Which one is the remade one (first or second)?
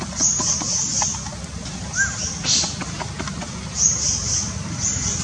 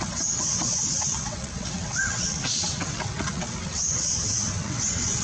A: second